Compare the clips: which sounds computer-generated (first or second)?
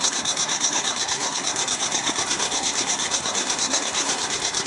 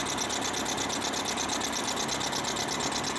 first